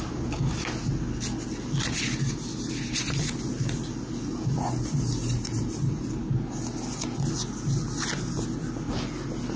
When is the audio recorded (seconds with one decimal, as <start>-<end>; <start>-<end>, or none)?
0.0-4.3; 6.3-9.6